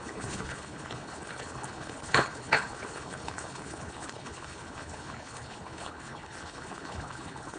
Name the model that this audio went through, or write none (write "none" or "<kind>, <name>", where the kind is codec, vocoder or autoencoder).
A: codec, HILCodec